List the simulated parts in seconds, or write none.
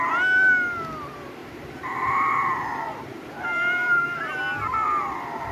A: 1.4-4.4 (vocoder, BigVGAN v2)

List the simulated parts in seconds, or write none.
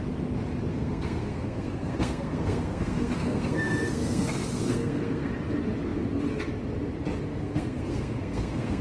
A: 0.7-5.3 (codec, SNAC); 7.3-8.8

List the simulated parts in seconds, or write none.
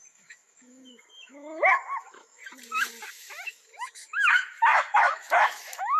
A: 0.0-2.4 (autoencoder, DAC-VAE); 3.1-6.0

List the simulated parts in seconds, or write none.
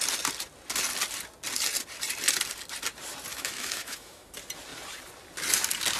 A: 3.3-4.3 (autoencoder, DAC-VAE)